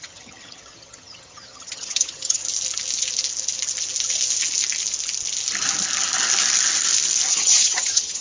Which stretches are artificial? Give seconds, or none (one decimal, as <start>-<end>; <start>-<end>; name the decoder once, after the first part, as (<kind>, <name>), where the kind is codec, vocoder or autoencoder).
0.0-2.4 (vocoder, HiFi-GAN); 7.3-8.2